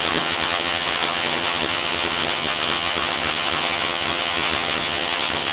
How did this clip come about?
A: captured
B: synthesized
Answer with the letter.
B